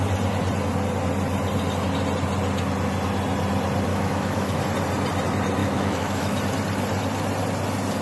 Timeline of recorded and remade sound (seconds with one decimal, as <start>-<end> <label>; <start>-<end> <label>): 0.0-3.9 recorded; 3.9-4.6 remade; 4.6-5.6 recorded; 5.6-6.4 remade; 6.4-8.0 recorded